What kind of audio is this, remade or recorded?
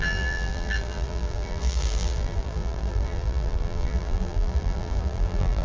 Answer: remade